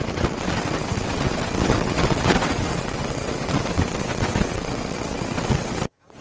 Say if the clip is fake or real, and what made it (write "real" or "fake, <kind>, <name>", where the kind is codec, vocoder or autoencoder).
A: fake, vocoder, WaveNeXt